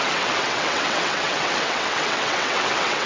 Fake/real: fake